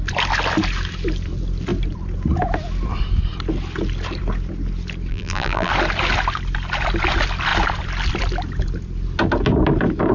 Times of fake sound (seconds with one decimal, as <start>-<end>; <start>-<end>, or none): 5.1-5.7